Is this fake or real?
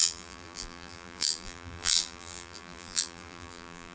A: fake